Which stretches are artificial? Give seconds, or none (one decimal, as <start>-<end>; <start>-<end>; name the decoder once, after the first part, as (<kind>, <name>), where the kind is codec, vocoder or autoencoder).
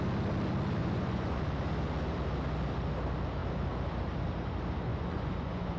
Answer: 0.8-1.4 (vocoder, Vocos); 4.9-5.8